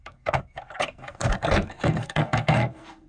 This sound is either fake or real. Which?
fake